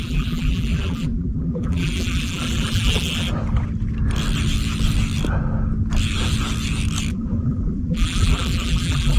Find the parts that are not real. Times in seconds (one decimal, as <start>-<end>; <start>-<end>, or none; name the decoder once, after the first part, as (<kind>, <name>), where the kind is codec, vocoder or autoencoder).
0.0-3.3 (vocoder, BigVGAN v2); 7.1-9.2